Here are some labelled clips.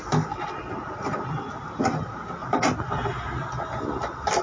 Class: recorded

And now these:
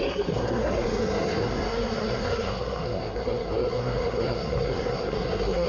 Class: remade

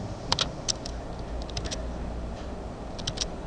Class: recorded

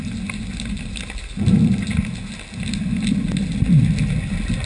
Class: recorded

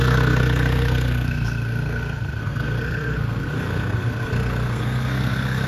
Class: remade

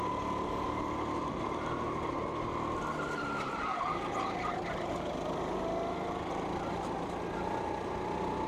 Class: recorded